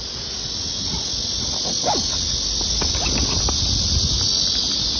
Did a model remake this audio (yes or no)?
no